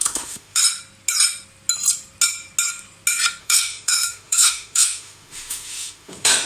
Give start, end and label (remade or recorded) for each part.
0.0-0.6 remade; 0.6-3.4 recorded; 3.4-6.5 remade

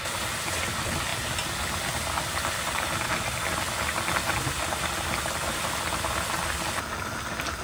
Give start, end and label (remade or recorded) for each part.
0.0-7.6 recorded

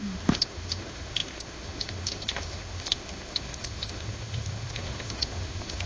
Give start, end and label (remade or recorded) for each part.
0.0-5.9 remade